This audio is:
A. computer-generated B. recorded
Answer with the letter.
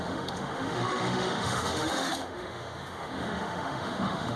A